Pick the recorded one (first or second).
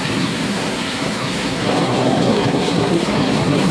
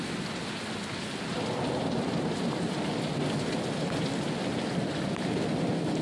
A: second